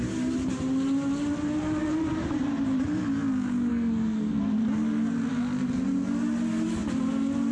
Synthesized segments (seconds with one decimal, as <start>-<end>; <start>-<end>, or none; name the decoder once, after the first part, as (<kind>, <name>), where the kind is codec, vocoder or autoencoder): 3.7-4.4 (codec, SNAC)